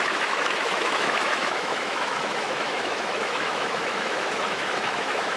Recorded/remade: remade